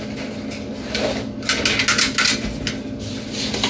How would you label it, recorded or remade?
recorded